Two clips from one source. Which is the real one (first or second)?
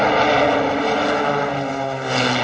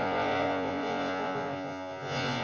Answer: first